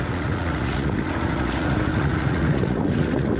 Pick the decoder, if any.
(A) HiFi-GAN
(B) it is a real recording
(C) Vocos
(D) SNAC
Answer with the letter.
C